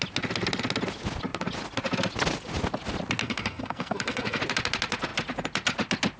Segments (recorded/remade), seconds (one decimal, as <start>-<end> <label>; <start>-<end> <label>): 0.0-3.2 recorded; 3.2-4.4 remade; 4.4-6.2 recorded

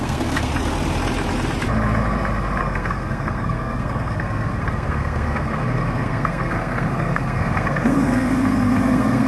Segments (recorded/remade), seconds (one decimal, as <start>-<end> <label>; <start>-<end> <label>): 0.0-0.5 remade; 0.5-2.6 recorded; 2.6-9.3 remade

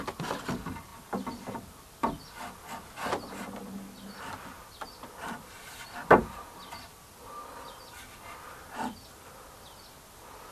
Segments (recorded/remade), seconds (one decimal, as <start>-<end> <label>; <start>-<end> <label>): 0.0-10.5 recorded

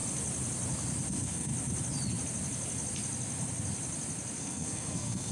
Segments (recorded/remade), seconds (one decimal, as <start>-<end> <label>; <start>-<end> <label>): 0.0-1.1 recorded; 1.1-1.5 remade; 1.5-4.4 recorded; 4.4-5.3 remade

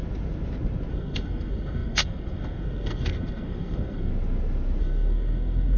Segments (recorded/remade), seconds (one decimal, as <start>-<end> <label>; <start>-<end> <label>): 0.0-0.9 recorded; 0.9-4.1 remade; 4.1-4.8 recorded; 4.8-5.8 remade